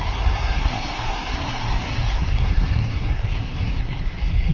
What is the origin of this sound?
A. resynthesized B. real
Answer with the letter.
A